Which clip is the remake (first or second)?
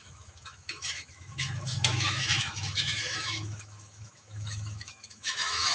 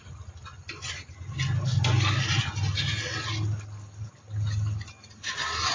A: first